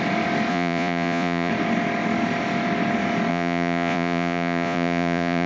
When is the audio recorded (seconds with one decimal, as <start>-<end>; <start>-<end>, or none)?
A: 0.0-0.5; 1.5-3.3